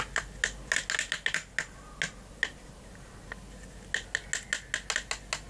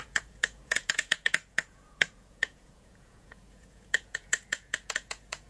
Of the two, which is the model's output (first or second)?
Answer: second